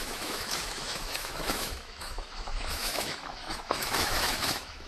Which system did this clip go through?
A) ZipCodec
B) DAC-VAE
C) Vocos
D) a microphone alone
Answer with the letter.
B